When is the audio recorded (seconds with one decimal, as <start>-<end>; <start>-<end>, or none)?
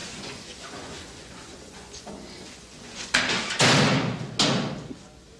3.2-5.4